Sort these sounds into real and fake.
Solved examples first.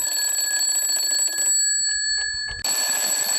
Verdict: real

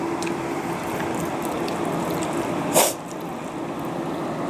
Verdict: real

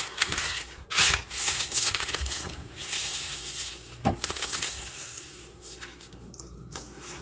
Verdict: fake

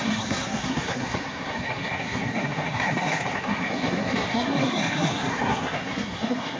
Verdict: fake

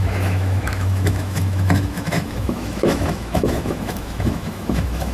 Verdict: fake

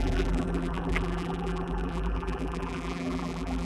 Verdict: fake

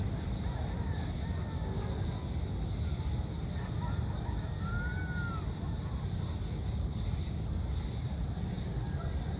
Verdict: real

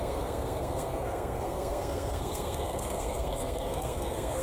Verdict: fake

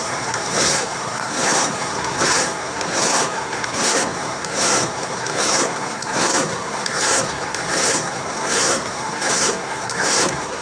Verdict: fake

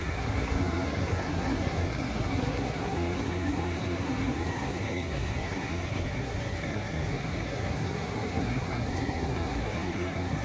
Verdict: fake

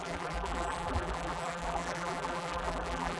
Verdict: fake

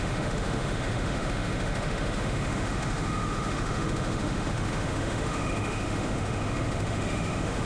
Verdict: fake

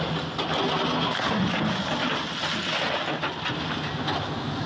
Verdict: real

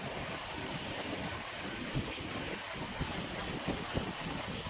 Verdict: real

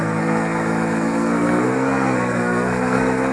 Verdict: fake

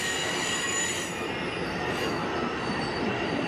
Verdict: real